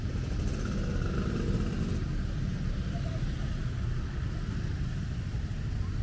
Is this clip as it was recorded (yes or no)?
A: yes